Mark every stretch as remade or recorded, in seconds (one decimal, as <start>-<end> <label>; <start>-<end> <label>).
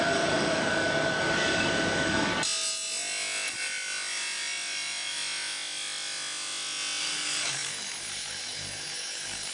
0.0-2.3 remade; 2.3-7.0 recorded; 7.0-9.5 remade